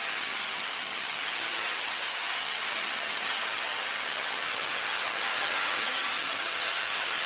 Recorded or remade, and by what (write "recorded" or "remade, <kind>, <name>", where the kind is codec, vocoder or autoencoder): remade, vocoder, HiFi-GAN